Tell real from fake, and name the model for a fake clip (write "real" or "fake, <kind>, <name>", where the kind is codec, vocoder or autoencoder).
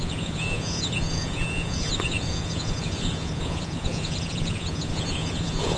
fake, vocoder, Vocos